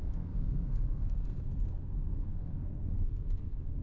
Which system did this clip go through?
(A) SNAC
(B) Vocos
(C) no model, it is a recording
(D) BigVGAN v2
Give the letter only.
A